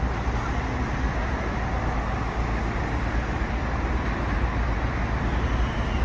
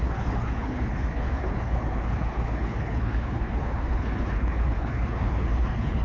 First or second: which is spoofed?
second